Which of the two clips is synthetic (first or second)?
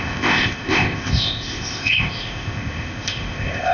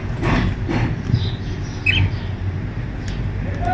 first